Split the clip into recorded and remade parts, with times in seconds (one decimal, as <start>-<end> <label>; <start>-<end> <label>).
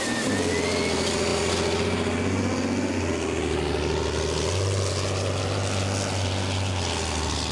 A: 0.0-7.5 recorded